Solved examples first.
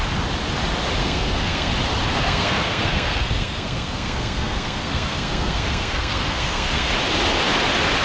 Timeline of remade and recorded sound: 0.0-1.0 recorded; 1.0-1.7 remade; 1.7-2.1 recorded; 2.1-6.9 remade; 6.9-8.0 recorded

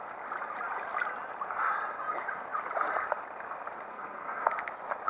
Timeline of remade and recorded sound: 0.0-3.9 recorded; 3.9-4.4 remade; 4.4-5.1 recorded

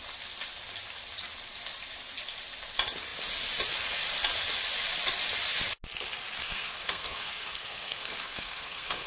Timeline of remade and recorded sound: 0.0-6.4 recorded; 6.4-9.1 remade

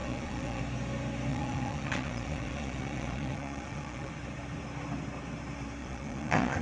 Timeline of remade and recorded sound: 0.0-0.6 remade; 0.6-1.3 recorded; 1.3-4.1 remade; 4.1-5.8 recorded; 5.8-6.6 remade

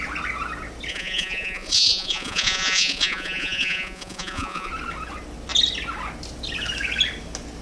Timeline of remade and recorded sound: 0.0-0.9 recorded; 0.9-4.7 remade; 4.7-7.6 recorded

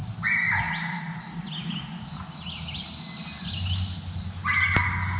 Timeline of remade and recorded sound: 0.0-5.2 recorded

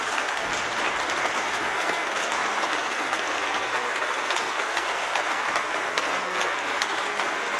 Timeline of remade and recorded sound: 0.0-0.5 remade; 0.5-1.2 recorded; 1.2-7.6 remade